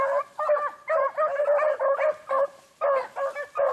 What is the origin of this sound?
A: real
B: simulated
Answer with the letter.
A